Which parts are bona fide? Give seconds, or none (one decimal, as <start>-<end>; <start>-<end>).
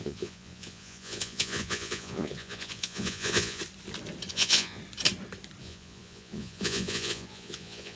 3.6-4.3; 4.8-5.6